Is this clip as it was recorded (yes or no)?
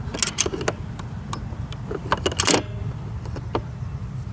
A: yes